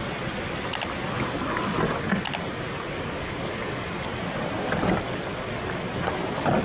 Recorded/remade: recorded